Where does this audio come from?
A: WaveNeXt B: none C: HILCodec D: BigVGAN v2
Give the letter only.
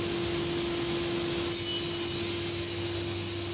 B